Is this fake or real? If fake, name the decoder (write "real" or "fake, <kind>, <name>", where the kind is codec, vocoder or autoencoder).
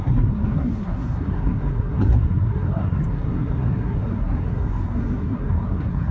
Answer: fake, codec, SNAC